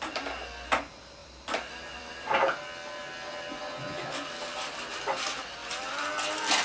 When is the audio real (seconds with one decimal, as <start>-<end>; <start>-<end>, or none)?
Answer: 0.0-1.2; 2.1-5.6; 6.1-6.6